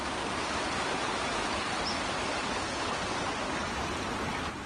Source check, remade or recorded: recorded